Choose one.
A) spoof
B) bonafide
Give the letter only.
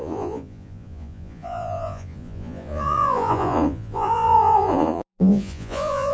A